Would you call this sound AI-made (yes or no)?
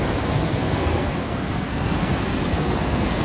yes